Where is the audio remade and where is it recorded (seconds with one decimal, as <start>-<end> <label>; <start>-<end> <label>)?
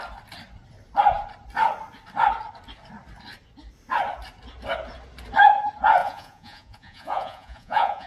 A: 0.0-6.0 recorded; 6.0-8.1 remade